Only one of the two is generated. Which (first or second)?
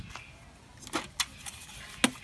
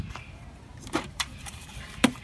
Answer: second